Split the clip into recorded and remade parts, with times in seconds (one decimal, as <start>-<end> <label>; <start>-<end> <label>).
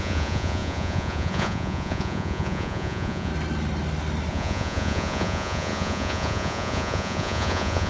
0.0-3.3 remade; 3.3-4.3 recorded; 4.3-7.9 remade